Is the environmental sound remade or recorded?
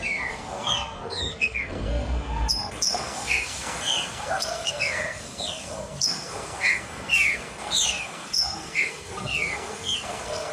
remade